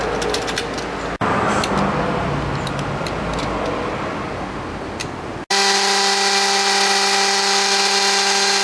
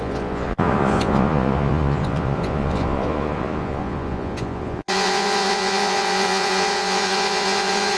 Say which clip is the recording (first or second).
first